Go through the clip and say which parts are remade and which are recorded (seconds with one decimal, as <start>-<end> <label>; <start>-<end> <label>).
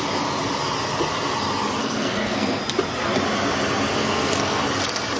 0.0-1.8 recorded; 1.8-2.6 remade; 2.6-4.0 recorded; 4.0-4.6 remade; 4.6-5.2 recorded